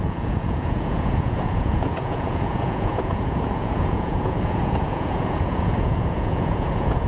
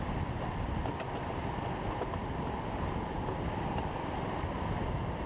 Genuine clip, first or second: second